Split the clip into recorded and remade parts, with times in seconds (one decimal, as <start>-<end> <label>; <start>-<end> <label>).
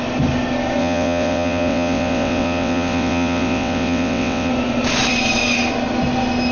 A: 0.0-0.8 recorded; 0.8-4.5 remade; 4.5-6.5 recorded